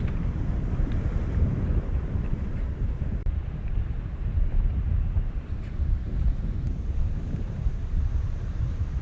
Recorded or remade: remade